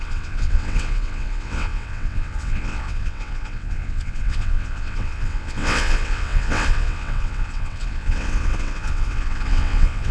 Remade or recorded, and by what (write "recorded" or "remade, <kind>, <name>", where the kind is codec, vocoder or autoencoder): remade, vocoder, WaveNeXt